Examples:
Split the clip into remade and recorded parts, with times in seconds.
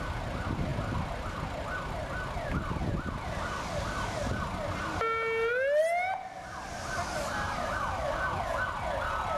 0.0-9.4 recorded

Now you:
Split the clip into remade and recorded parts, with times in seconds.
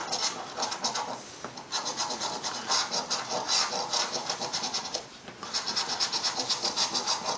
0.0-4.2 recorded; 4.2-6.9 remade; 6.9-7.4 recorded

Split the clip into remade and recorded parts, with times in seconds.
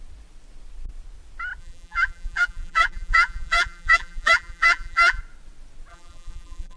0.0-1.6 recorded; 1.6-5.2 remade; 5.2-5.9 recorded; 5.9-6.8 remade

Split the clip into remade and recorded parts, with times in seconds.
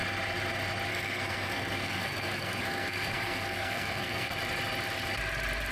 0.0-0.9 recorded; 0.9-4.3 remade; 4.3-5.7 recorded